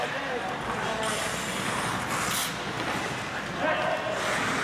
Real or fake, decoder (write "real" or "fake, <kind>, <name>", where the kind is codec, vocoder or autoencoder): real